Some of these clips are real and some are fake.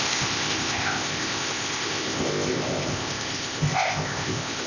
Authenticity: fake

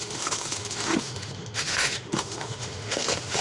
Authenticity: fake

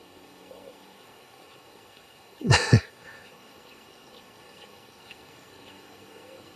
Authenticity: fake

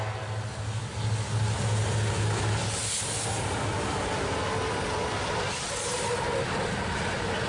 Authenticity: real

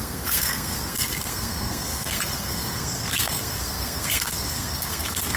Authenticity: fake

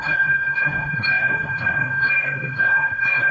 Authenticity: fake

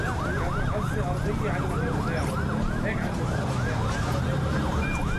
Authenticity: real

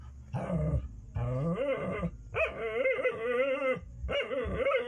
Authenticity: real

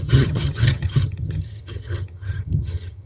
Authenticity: fake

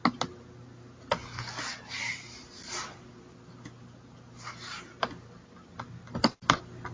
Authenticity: real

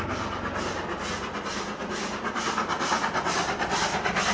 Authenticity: real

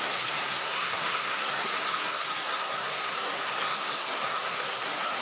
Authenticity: fake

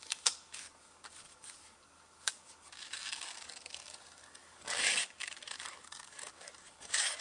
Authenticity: fake